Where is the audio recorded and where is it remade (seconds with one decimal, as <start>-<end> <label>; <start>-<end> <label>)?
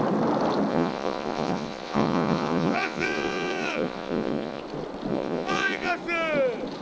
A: 0.0-0.7 recorded; 0.7-4.6 remade; 4.6-5.1 recorded; 5.1-5.9 remade; 5.9-6.8 recorded